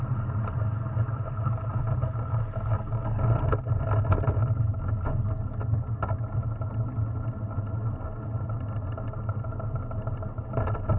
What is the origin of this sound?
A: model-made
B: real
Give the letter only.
B